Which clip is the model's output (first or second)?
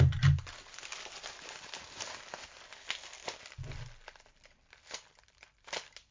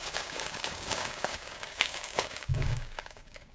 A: second